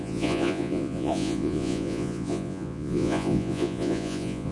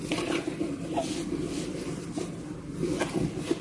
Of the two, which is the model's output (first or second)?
first